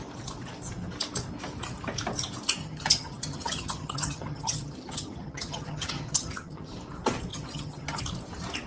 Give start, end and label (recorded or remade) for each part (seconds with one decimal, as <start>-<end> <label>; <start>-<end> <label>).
0.0-2.6 recorded; 2.6-6.7 remade; 6.7-7.3 recorded; 7.3-8.0 remade; 8.0-8.7 recorded